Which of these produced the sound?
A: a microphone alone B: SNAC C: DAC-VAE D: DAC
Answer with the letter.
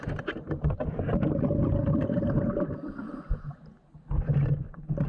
A